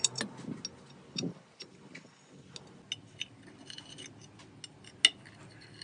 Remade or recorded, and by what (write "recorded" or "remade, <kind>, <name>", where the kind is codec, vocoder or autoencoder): recorded